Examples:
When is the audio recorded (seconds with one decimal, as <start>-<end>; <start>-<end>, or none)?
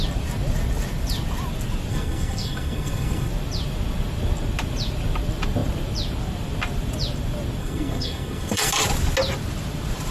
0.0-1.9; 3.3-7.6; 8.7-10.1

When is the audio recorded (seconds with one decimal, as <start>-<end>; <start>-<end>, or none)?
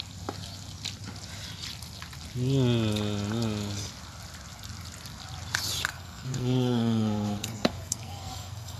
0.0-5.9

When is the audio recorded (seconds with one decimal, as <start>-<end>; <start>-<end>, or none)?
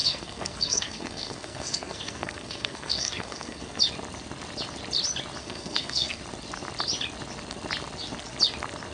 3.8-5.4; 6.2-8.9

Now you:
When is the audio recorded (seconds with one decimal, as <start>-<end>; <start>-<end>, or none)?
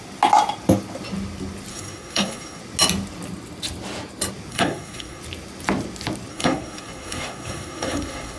0.0-1.7; 2.6-4.5; 5.2-6.3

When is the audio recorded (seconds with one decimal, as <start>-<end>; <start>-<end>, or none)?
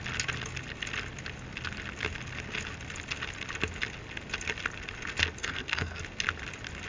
0.0-5.4; 6.0-6.9